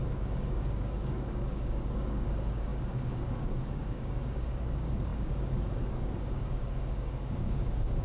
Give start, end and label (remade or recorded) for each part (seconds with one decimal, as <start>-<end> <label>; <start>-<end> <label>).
0.0-8.0 remade